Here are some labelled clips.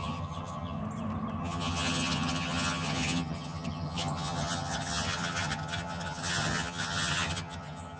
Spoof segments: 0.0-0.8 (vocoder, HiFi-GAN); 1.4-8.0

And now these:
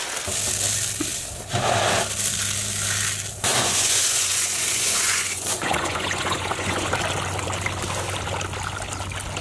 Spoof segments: 3.5-6.9 (vocoder, Vocos)

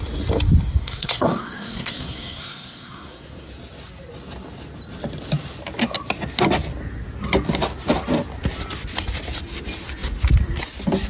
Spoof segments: 0.7-3.5 (codec, SNAC)